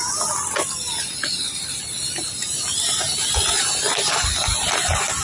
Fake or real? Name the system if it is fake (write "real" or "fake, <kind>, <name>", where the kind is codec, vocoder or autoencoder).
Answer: real